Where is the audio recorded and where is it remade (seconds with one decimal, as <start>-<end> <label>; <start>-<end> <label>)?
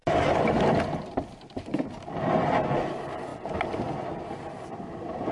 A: 0.0-5.3 recorded